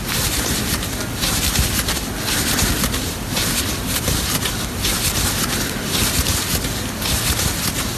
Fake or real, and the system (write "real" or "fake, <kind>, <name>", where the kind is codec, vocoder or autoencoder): real